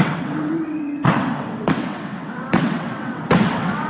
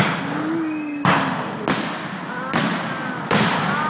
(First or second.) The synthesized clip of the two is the first